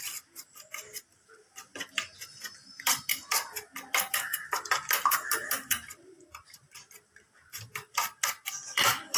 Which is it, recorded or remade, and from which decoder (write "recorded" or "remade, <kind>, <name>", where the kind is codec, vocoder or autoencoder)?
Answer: remade, vocoder, BigVGAN v2